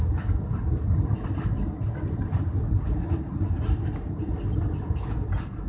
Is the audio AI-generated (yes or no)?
no